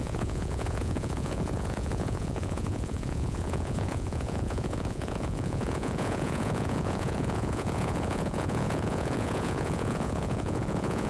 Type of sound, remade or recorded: remade